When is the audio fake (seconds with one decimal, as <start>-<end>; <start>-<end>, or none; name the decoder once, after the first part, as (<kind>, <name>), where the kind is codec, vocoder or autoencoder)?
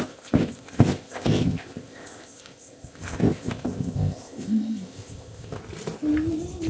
0.0-5.6 (codec, ZipCodec)